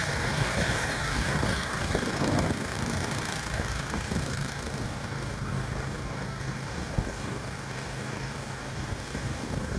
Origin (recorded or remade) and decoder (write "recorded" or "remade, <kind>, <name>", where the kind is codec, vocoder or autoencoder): remade, codec, DAC